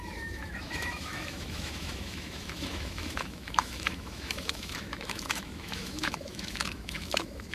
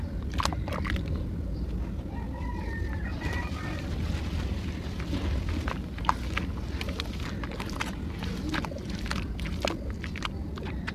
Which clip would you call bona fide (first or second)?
second